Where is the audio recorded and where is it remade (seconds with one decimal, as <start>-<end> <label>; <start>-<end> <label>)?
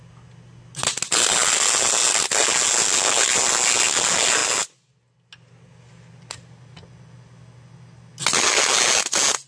0.0-9.5 recorded